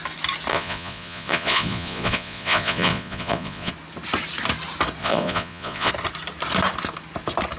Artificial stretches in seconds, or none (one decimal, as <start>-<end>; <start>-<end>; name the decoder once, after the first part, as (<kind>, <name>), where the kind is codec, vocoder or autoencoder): 0.5-3.7 (vocoder, Vocos); 5.0-5.9